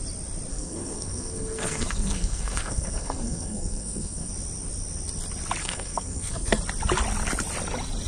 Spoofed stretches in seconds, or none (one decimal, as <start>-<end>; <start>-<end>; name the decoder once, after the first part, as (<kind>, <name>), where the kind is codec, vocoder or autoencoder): 0.5-4.3 (codec, SNAC); 5.6-6.6